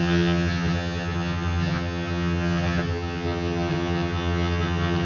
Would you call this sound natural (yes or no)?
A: no